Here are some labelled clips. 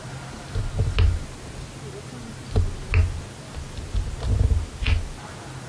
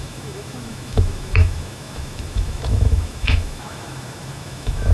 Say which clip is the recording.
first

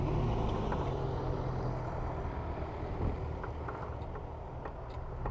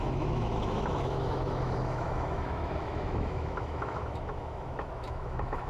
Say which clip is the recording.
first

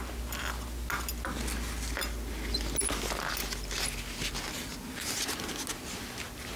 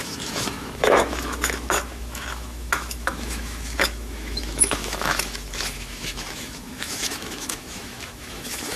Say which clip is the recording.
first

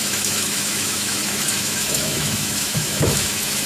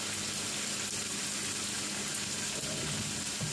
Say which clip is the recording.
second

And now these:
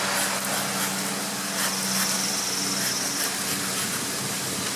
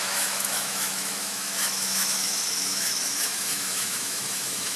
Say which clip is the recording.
first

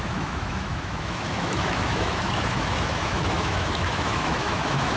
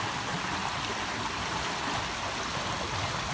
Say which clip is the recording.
second